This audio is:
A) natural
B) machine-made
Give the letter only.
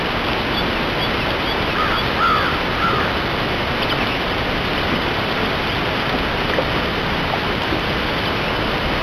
A